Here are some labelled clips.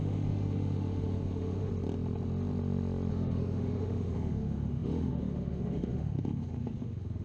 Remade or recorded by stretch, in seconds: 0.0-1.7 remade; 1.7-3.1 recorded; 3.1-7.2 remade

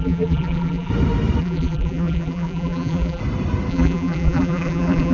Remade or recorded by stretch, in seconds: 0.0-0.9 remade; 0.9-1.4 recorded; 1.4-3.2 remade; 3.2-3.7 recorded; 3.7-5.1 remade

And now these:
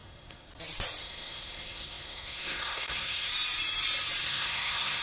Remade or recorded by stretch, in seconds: 0.0-0.5 remade; 0.5-1.0 recorded; 1.0-3.3 remade; 3.3-4.2 recorded; 4.2-5.0 remade

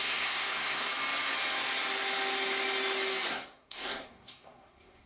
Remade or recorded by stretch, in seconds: 0.0-0.9 remade; 0.9-3.3 recorded; 3.3-5.1 remade

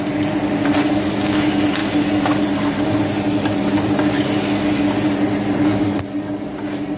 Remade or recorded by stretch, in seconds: 0.0-7.0 recorded

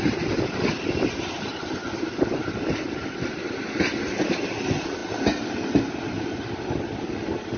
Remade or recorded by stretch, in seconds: 0.0-7.6 recorded

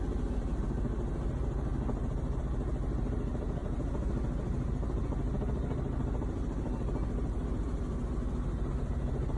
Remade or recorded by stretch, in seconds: 0.0-9.4 recorded

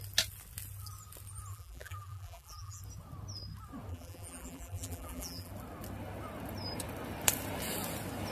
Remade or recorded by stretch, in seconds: 0.0-1.5 recorded; 1.5-2.8 remade; 2.8-3.9 recorded; 3.9-5.5 remade; 5.5-8.3 recorded